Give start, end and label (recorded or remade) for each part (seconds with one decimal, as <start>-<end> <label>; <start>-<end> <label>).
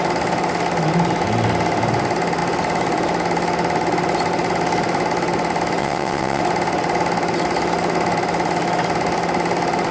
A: 0.0-5.8 recorded; 5.8-6.4 remade; 6.4-9.9 recorded